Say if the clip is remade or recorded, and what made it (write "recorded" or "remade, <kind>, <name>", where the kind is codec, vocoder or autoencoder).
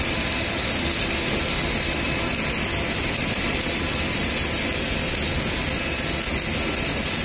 recorded